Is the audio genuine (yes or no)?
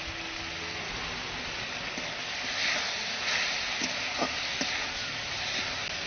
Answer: yes